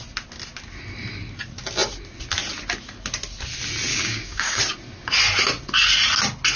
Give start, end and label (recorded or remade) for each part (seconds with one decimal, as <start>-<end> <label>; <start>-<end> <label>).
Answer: 0.0-3.9 recorded; 3.9-4.6 remade; 4.6-6.6 recorded